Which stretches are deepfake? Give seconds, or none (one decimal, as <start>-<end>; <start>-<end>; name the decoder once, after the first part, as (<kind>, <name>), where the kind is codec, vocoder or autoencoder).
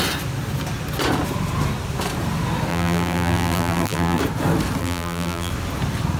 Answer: 2.7-4.2 (vocoder, BigVGAN v2); 4.8-5.5